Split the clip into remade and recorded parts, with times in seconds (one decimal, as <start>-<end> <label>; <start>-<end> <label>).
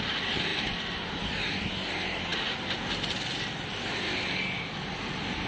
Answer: 0.0-5.5 recorded